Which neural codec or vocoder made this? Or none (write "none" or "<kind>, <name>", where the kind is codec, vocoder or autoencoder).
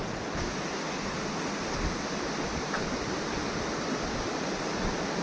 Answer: none